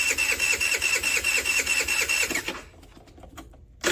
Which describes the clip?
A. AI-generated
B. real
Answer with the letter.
B